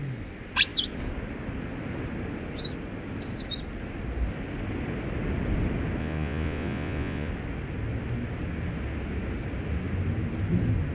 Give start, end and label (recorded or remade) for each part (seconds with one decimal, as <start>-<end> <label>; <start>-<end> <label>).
0.0-6.0 recorded; 6.0-7.3 remade; 7.3-10.9 recorded

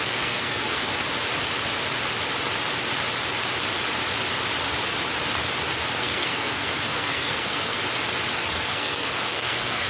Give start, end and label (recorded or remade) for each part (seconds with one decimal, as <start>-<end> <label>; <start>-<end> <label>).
0.0-0.9 remade; 0.9-6.0 recorded; 6.0-7.8 remade; 7.8-8.4 recorded; 8.4-9.9 remade

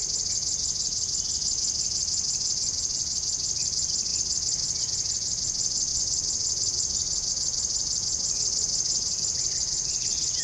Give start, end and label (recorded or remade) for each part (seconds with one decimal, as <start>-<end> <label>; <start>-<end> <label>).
0.0-10.4 recorded

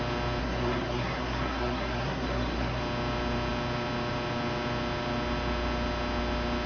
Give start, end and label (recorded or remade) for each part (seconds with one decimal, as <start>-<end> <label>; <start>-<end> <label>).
0.0-0.4 recorded; 0.4-2.8 remade; 2.8-6.7 recorded